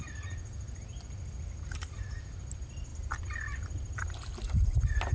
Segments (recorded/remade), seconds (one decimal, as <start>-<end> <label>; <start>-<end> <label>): 0.0-5.1 recorded